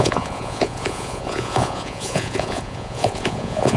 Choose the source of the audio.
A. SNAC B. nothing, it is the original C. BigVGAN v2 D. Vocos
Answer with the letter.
D